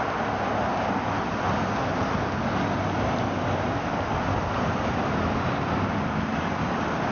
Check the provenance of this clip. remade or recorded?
recorded